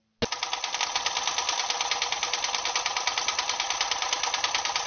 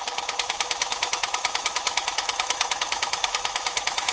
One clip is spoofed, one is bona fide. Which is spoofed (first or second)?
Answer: second